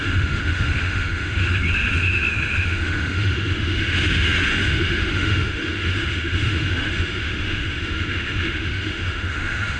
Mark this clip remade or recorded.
remade